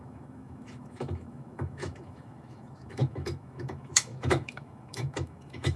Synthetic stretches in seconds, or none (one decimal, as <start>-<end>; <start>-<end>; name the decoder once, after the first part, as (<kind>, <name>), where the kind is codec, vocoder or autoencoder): 0.0-5.8 (autoencoder, DAC-VAE)